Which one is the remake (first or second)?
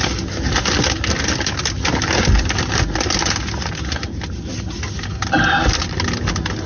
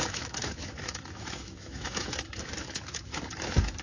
second